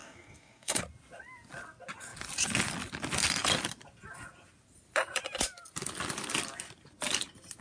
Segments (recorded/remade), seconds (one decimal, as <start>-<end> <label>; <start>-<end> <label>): 0.0-0.8 remade; 0.8-7.6 recorded